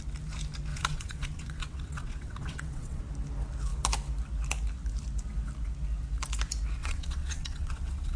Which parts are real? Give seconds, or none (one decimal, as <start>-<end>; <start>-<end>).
0.0-0.7; 3.0-6.8